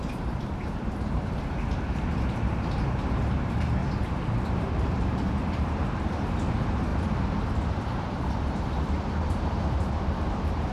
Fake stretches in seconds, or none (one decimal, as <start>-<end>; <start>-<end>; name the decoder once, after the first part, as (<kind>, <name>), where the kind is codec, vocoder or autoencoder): 0.0-3.8 (vocoder, BigVGAN v2); 4.5-10.7